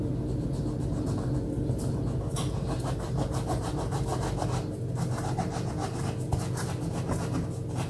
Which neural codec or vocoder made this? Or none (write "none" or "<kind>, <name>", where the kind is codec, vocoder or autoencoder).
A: none